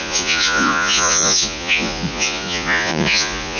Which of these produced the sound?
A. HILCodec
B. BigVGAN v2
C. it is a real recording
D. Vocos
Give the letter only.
D